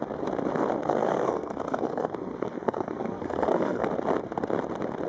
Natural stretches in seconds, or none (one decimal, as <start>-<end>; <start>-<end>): 0.0-0.8; 3.9-5.1